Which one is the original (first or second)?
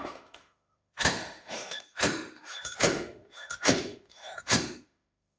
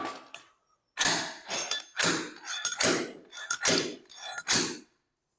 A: second